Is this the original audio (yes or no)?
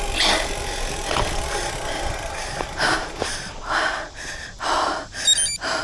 yes